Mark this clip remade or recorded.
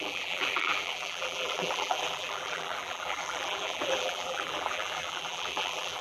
remade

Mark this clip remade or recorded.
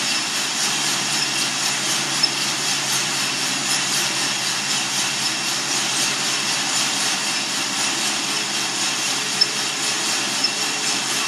remade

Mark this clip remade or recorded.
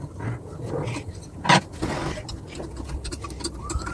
recorded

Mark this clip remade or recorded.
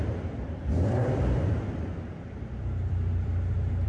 remade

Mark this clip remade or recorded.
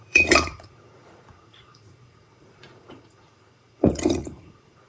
remade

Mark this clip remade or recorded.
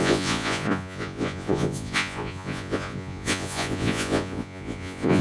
remade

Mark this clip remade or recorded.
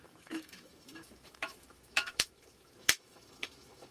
remade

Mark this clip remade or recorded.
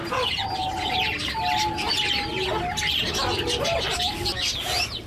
recorded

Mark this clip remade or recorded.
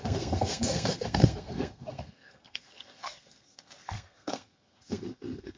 remade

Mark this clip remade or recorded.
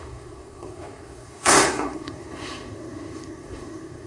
remade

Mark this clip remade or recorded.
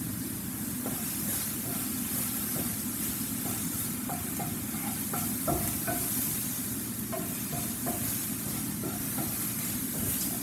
recorded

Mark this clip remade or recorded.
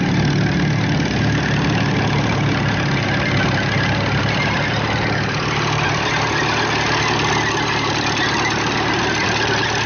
recorded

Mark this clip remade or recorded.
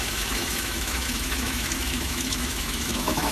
remade